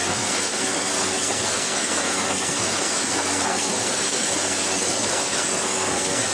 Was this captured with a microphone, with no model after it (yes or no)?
no